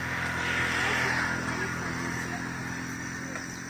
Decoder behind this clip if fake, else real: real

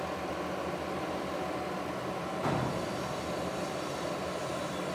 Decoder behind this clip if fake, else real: real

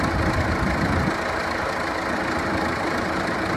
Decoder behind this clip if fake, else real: fake, vocoder, BigVGAN v2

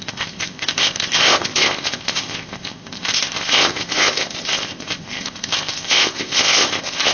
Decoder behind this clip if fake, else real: fake, codec, ZipCodec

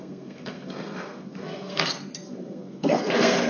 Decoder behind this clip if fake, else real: fake, codec, SNAC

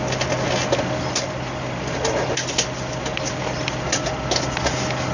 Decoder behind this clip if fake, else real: real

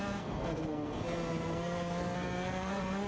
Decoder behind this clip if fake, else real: fake, codec, SNAC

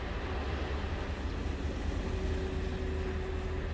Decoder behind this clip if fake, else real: real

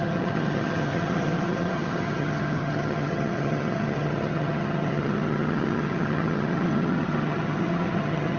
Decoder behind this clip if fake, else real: fake, vocoder, HiFi-GAN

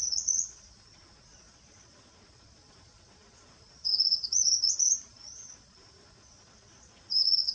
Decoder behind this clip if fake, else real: fake, vocoder, Vocos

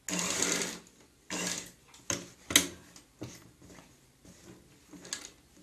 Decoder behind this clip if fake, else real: real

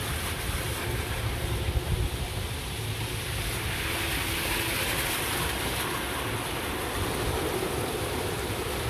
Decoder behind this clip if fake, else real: real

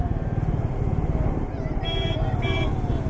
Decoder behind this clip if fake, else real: real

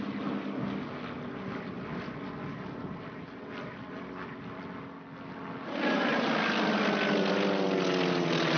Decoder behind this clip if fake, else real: real